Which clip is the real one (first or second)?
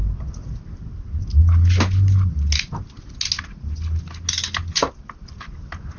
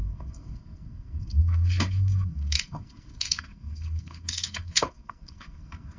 first